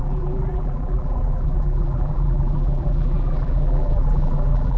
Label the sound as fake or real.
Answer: fake